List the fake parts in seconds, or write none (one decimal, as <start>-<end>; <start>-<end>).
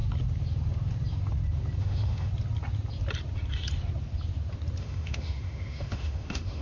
1.8-2.3; 4.8-6.6